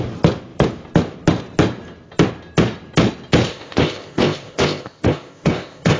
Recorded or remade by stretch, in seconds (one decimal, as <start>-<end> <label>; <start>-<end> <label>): 0.0-3.5 recorded; 3.5-6.0 remade